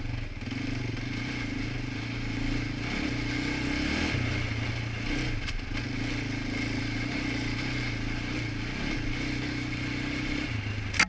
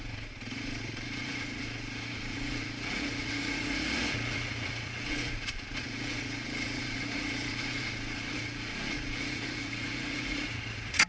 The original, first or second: first